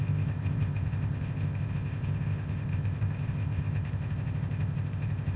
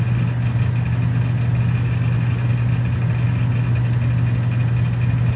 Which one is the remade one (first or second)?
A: first